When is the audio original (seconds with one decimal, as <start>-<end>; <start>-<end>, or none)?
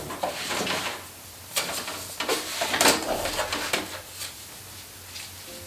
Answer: 0.0-2.3; 3.3-5.7